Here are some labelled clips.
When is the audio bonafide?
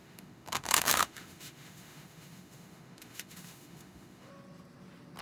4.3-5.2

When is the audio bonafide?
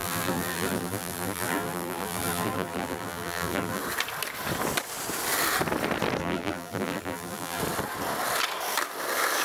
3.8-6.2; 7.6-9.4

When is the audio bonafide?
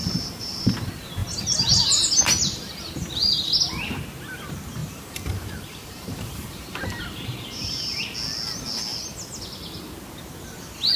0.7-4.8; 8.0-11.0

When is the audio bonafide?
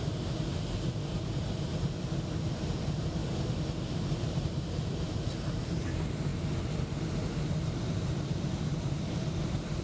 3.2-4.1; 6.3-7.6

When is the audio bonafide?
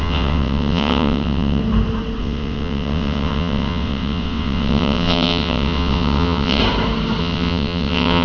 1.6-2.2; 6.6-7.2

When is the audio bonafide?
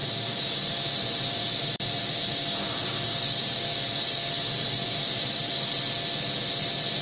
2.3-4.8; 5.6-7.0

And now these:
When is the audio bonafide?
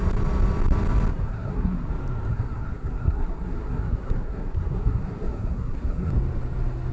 0.0-1.1; 1.9-2.3; 6.1-6.9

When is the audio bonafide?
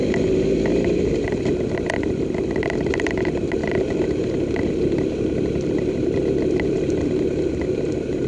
0.0-8.3